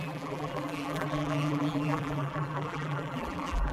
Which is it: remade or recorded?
remade